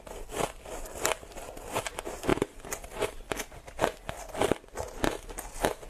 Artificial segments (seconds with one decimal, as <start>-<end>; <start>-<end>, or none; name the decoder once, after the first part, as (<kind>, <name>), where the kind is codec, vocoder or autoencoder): none